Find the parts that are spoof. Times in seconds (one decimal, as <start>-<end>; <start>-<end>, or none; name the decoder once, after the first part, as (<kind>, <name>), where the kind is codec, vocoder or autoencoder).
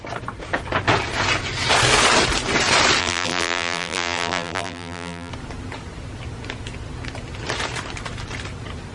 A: 3.0-5.3 (vocoder, BigVGAN v2)